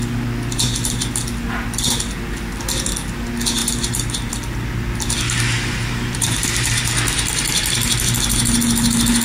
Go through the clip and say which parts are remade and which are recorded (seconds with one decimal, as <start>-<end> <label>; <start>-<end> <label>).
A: 0.0-5.8 recorded; 5.8-6.9 remade; 6.9-9.2 recorded